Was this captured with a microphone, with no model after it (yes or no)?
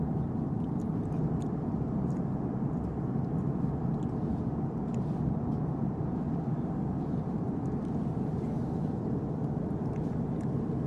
no